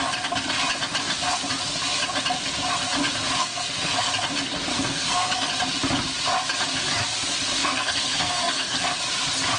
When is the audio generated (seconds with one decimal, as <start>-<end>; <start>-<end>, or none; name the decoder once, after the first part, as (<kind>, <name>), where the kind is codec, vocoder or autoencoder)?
3.4-4.1 (codec, SNAC); 4.7-5.5; 7.6-9.0